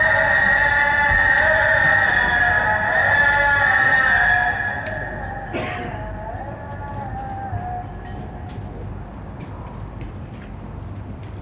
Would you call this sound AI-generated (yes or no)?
no